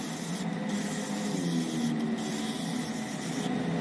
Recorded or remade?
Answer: recorded